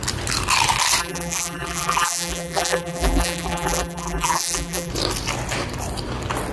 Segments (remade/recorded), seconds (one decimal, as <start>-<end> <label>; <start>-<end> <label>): 0.0-1.0 recorded; 1.0-4.9 remade; 4.9-6.5 recorded